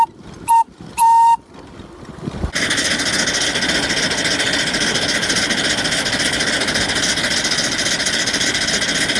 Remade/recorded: recorded